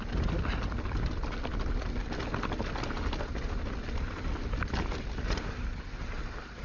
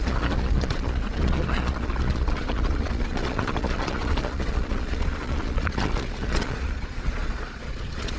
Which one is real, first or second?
first